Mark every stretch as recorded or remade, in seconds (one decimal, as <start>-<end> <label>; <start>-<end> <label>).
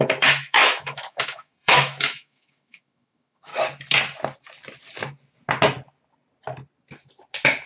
0.0-3.5 remade; 3.5-7.7 recorded